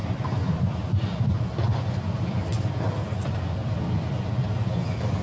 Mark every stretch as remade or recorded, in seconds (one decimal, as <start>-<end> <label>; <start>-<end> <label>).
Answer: 0.0-3.1 remade; 3.1-3.6 recorded; 3.6-4.3 remade; 4.3-5.2 recorded